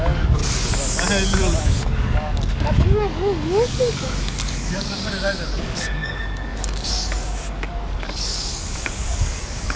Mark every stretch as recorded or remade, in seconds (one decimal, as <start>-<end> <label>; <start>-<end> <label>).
0.0-0.4 remade; 0.4-1.6 recorded; 1.6-9.8 remade